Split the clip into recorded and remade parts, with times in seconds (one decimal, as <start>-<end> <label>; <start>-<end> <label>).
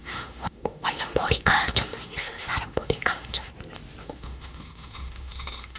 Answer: 0.0-3.5 remade; 3.5-4.0 recorded; 4.0-5.8 remade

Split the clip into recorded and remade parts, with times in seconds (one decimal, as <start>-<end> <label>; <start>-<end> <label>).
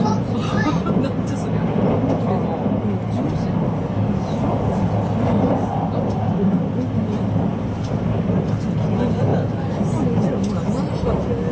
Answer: 0.0-11.5 recorded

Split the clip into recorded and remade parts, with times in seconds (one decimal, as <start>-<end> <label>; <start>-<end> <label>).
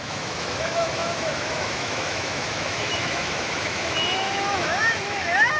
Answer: 0.0-5.6 remade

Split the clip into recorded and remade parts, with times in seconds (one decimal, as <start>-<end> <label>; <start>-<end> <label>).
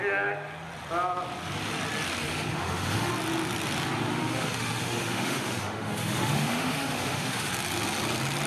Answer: 0.0-2.3 recorded; 2.3-3.1 remade; 3.1-4.1 recorded; 4.1-7.5 remade; 7.5-8.5 recorded